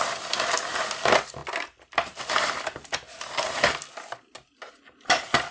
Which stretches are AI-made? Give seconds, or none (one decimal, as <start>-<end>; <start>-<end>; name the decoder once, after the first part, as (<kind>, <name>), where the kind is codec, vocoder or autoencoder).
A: none